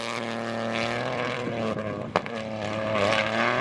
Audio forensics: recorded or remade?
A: recorded